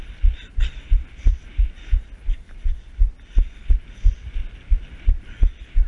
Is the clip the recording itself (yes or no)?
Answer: yes